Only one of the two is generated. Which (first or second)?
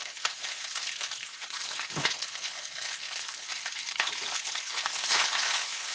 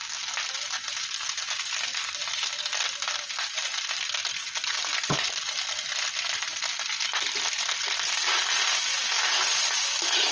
first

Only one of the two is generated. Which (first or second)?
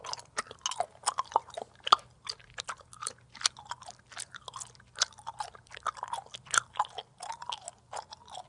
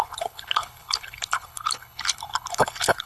second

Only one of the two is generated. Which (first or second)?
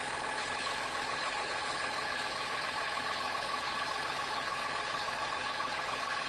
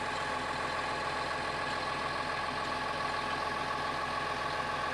first